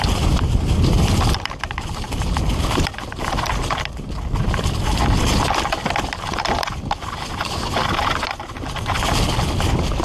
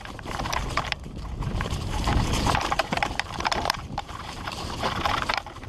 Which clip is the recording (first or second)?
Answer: first